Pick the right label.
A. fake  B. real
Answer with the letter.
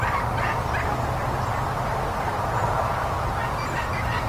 B